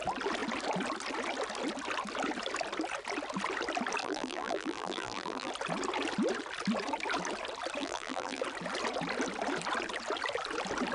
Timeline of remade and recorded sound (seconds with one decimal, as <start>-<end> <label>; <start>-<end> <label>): 0.0-4.0 recorded; 4.0-5.5 remade; 5.5-7.8 recorded; 7.8-8.4 remade; 8.4-10.9 recorded